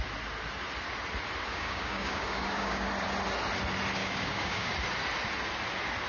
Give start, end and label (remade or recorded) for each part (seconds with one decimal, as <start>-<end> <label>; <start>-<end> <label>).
0.0-1.5 recorded; 1.5-2.9 remade; 2.9-4.0 recorded; 4.0-4.7 remade; 4.7-6.1 recorded